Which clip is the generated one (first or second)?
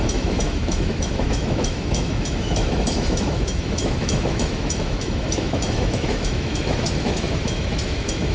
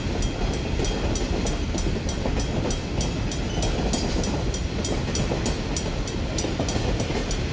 first